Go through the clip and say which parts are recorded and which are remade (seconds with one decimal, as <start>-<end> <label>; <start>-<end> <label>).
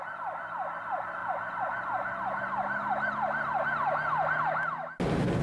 0.0-1.2 recorded; 1.2-4.4 remade; 4.4-5.4 recorded